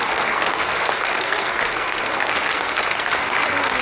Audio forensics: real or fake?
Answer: fake